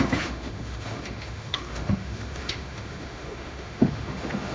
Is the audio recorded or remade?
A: remade